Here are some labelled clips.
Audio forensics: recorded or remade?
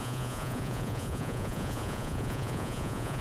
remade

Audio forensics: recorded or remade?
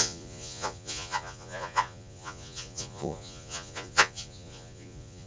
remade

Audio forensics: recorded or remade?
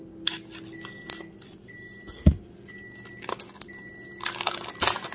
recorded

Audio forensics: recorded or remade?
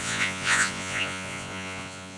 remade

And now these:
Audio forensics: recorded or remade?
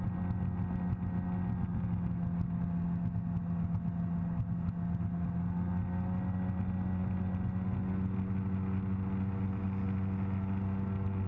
recorded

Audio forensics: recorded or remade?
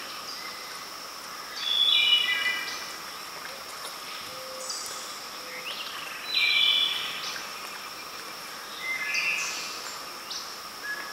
recorded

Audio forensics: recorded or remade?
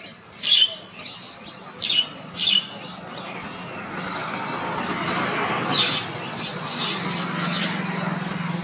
recorded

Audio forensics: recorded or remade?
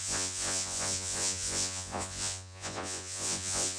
remade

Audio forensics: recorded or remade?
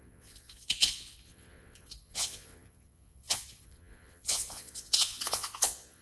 remade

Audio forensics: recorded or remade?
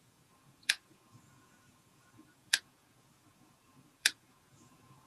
remade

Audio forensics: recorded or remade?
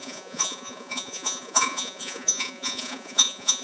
remade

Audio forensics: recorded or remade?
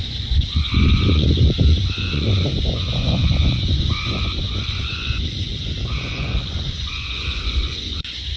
remade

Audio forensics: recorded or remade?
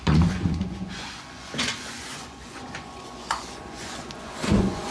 remade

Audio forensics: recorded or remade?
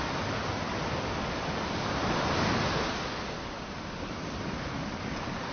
recorded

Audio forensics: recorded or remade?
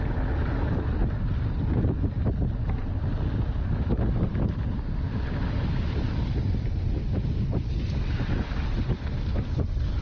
recorded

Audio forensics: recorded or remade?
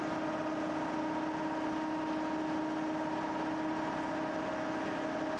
recorded